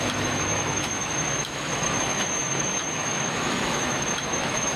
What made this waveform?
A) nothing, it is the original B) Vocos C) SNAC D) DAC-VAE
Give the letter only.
D